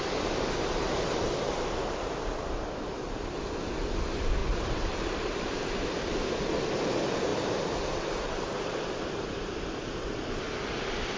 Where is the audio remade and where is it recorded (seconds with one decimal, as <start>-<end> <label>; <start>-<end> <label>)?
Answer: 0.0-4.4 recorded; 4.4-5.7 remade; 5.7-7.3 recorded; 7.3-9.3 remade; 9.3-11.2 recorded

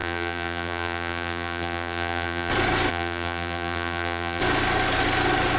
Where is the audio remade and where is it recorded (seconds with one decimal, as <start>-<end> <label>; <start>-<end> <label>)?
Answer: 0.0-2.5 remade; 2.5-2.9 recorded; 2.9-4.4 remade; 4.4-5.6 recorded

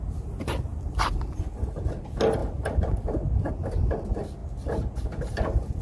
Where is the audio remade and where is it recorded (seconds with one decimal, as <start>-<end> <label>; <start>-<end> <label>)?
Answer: 0.0-0.7 recorded; 0.7-1.4 remade; 1.4-2.4 recorded; 2.4-3.5 remade; 3.5-5.8 recorded